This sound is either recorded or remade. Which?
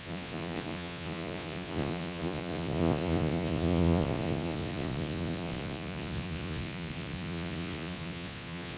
remade